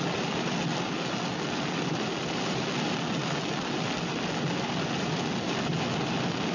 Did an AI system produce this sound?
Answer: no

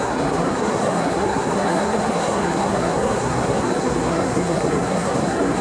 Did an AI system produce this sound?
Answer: yes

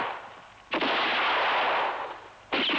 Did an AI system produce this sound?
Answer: no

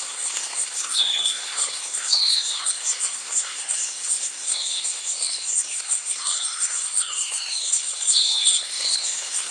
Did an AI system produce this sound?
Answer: yes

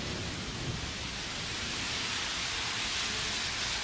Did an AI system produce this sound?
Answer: no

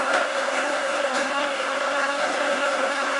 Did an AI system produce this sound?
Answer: yes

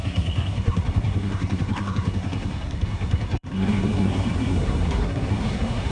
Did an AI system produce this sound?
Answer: yes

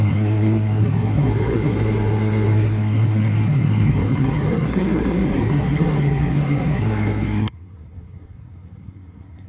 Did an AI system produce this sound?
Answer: yes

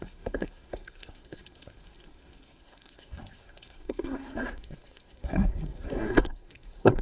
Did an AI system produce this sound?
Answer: yes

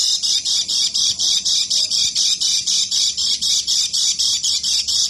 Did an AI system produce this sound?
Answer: no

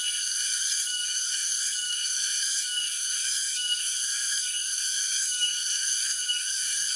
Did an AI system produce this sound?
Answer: yes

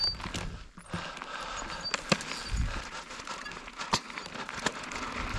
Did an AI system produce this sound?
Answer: no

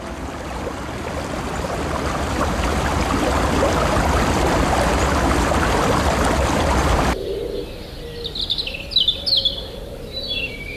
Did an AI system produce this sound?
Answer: no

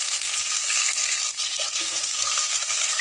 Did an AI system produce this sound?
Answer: yes